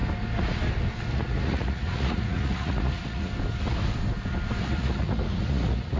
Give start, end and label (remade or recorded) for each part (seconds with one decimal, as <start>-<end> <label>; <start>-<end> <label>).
0.0-1.1 recorded; 1.1-3.3 remade; 3.3-4.6 recorded; 4.6-6.0 remade

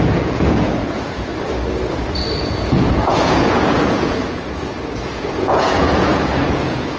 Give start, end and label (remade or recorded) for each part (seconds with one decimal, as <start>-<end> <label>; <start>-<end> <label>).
0.0-1.3 remade; 1.3-2.4 recorded; 2.4-7.0 remade

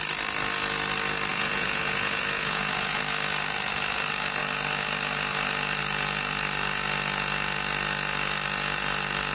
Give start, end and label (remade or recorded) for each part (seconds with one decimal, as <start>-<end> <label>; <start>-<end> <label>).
0.0-1.3 recorded; 1.3-3.0 remade; 3.0-9.3 recorded